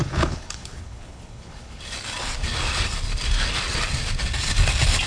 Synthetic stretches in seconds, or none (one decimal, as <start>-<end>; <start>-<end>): 0.0-1.8